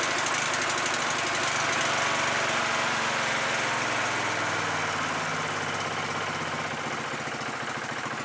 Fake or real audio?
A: real